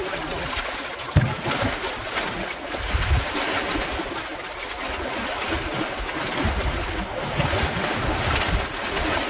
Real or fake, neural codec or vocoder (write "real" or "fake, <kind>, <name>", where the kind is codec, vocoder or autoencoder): real